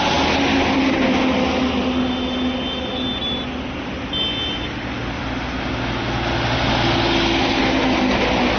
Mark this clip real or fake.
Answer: real